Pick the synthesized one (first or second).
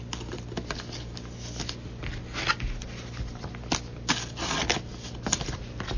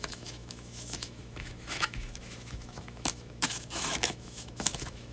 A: second